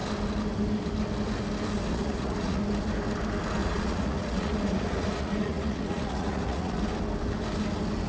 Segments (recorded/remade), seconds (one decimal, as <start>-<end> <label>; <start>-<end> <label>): 0.0-1.9 recorded; 1.9-2.6 remade; 2.6-3.6 recorded; 3.6-6.8 remade; 6.8-8.1 recorded